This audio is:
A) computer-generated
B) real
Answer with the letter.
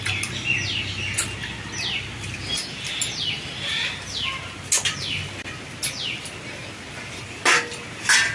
B